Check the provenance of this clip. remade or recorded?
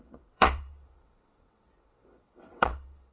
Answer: remade